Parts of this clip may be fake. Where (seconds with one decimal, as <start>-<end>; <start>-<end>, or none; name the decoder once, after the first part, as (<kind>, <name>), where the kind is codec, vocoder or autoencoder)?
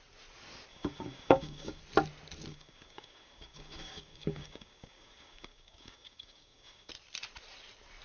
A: 0.7-1.8 (codec, DAC); 2.5-6.9